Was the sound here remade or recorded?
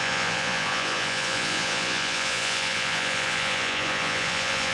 remade